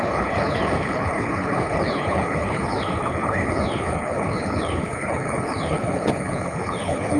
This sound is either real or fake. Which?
fake